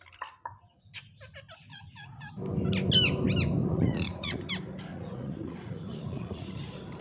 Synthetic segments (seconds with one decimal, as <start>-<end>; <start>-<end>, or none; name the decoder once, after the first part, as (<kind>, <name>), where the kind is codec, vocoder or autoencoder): 1.7-2.3 (vocoder, Vocos); 3.6-4.5; 4.9-6.5